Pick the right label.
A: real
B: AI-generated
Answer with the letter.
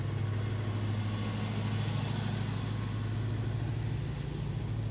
A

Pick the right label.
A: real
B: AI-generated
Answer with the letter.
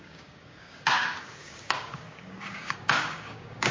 B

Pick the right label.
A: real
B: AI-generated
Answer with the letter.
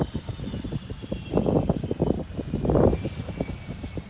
A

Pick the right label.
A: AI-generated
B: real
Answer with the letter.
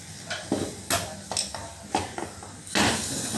B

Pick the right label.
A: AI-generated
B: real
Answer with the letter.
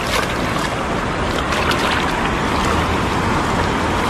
B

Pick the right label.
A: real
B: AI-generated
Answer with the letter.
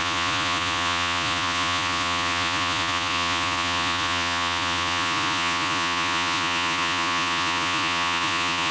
B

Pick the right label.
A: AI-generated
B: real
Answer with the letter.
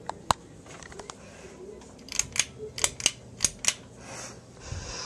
B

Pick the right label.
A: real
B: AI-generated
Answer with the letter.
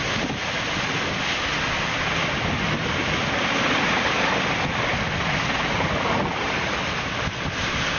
A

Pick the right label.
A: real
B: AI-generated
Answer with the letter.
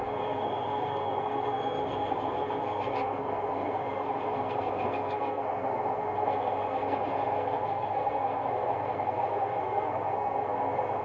B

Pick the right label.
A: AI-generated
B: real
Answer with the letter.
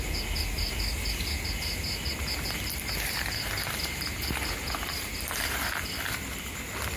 B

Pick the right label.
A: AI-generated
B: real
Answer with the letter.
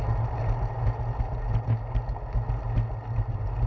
B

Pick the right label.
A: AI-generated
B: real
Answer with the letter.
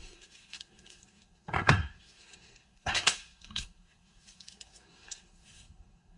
A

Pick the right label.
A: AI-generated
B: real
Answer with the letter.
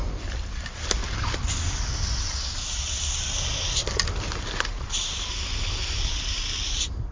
B